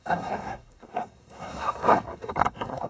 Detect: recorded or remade remade